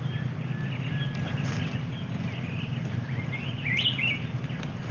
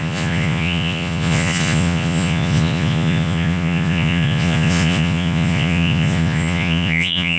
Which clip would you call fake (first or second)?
second